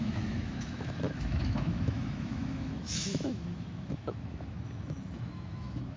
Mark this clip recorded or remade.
remade